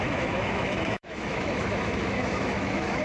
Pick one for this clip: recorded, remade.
remade